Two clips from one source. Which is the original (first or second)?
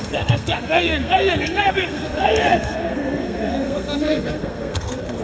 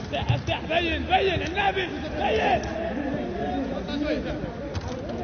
second